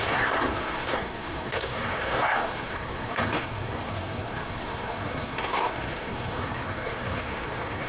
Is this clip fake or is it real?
fake